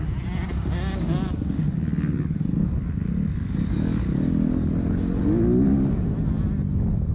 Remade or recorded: recorded